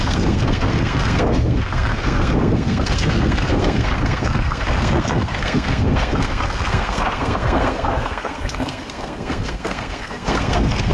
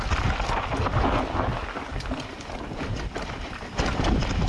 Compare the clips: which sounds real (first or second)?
second